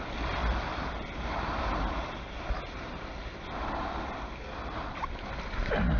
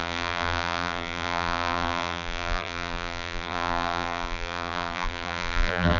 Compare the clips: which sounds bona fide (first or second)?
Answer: first